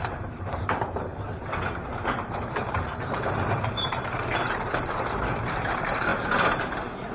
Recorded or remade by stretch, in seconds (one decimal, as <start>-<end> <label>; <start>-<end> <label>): 0.0-1.1 remade; 1.1-2.0 recorded; 2.0-6.1 remade; 6.1-7.1 recorded